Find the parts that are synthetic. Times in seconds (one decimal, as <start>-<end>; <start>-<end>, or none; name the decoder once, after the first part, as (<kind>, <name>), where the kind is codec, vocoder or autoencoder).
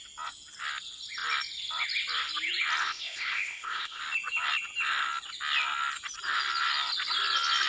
2.8-4.0 (codec, ZipCodec)